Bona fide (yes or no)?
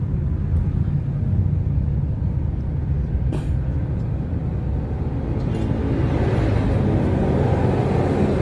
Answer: yes